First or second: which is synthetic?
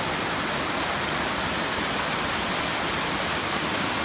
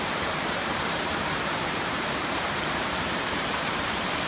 second